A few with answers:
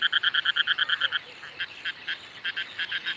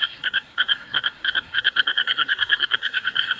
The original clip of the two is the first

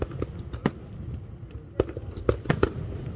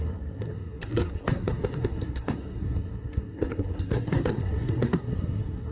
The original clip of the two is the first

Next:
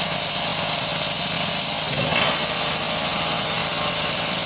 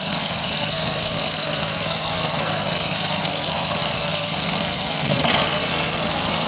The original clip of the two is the first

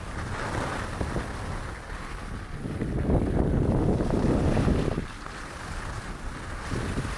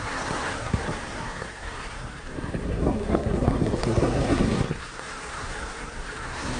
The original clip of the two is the first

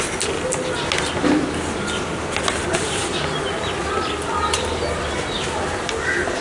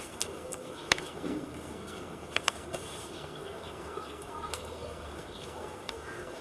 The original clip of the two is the first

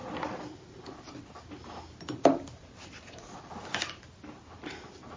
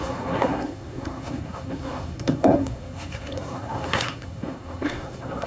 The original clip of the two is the first